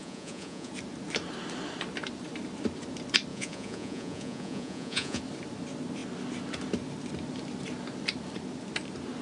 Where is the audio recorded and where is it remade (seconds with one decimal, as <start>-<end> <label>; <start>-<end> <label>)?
0.0-0.7 remade; 0.7-3.3 recorded; 3.3-5.2 remade; 5.2-9.2 recorded